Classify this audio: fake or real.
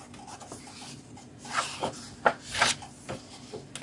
real